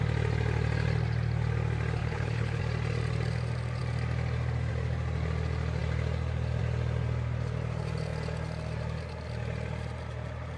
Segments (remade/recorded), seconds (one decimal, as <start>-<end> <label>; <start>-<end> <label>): 0.0-2.0 recorded; 2.0-2.6 remade; 2.6-10.6 recorded